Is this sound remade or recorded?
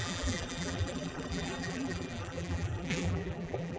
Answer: remade